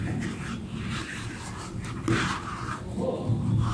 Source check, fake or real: real